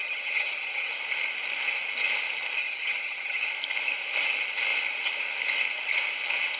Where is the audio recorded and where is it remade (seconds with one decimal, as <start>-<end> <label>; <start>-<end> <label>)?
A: 0.0-0.9 remade; 0.9-2.6 recorded; 2.6-3.4 remade; 3.4-6.6 recorded